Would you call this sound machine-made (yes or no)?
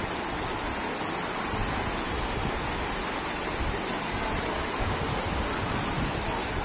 no